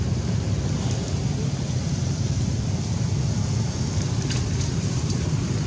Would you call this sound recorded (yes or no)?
yes